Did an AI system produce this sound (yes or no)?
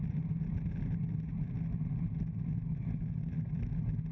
no